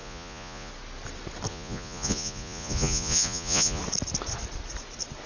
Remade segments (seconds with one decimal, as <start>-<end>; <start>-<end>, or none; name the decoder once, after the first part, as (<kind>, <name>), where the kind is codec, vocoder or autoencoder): 0.0-0.7 (vocoder, Vocos); 1.5-3.8